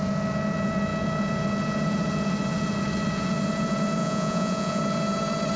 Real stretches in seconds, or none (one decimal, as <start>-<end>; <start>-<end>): 0.0-4.0; 4.8-5.6